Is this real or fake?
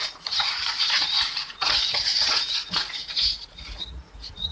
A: fake